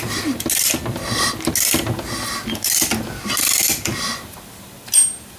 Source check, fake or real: real